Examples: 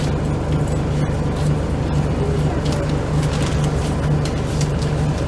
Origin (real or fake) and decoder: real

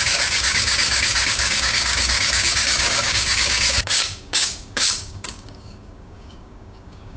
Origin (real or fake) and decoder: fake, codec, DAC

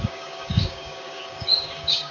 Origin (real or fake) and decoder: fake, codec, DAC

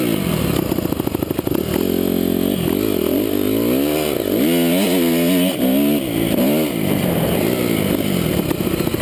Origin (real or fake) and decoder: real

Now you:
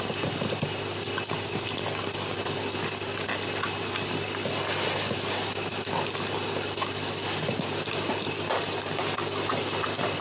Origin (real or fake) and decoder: real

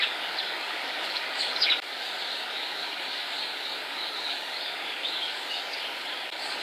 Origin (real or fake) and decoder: fake, codec, DAC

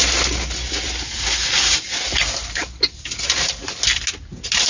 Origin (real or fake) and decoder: real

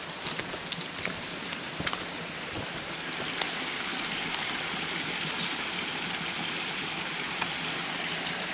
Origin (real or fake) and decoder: real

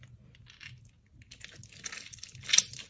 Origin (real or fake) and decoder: real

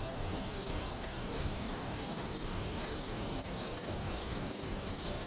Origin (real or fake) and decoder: fake, codec, DAC